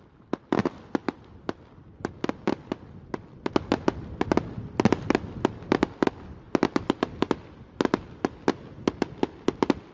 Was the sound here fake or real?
real